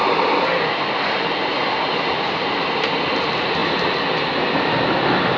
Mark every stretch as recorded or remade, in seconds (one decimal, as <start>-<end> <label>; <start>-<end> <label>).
0.0-3.2 remade; 3.2-3.6 recorded; 3.6-4.3 remade; 4.3-5.4 recorded